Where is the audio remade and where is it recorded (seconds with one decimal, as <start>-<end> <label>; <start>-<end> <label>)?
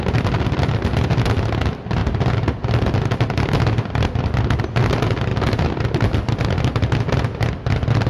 0.0-8.1 recorded